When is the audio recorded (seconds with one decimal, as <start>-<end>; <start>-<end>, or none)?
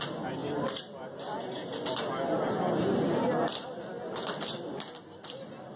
0.0-5.8